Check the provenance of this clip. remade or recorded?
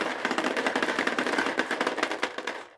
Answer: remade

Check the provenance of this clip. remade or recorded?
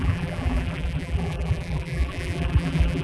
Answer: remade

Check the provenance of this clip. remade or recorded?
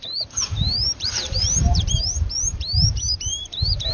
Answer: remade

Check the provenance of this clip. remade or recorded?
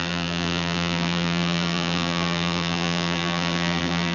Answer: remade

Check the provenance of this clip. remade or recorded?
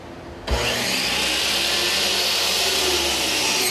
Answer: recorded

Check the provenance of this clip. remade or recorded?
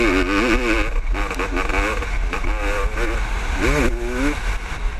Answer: recorded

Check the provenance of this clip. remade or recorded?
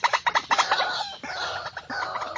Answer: recorded